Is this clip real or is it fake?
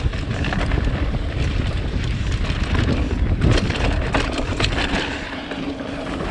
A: real